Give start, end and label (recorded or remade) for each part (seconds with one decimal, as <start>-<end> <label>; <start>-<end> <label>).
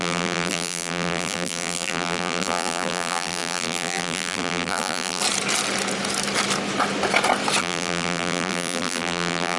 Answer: 0.0-5.2 remade; 5.2-7.6 recorded; 7.6-9.6 remade